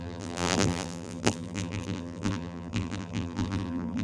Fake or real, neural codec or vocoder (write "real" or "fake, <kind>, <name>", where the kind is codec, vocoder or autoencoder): fake, vocoder, BigVGAN v2